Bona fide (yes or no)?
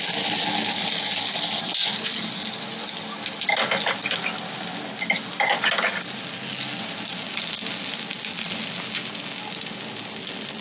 yes